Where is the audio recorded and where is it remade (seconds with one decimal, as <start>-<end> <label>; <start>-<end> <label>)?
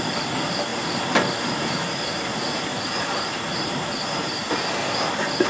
0.0-0.7 recorded; 0.7-2.1 remade; 2.1-2.7 recorded; 2.7-4.5 remade; 4.5-5.5 recorded